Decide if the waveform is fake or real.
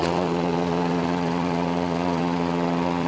fake